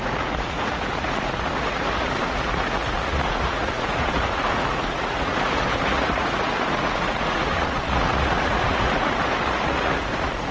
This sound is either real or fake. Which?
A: fake